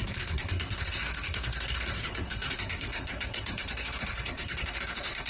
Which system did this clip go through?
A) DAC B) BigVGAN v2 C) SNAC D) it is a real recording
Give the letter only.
C